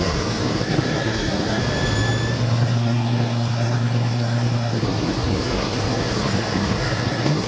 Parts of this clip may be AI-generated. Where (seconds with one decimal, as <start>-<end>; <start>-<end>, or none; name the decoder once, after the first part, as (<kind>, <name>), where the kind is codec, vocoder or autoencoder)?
0.0-1.6 (codec, SNAC); 2.4-7.5